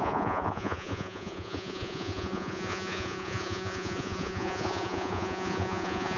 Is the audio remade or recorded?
remade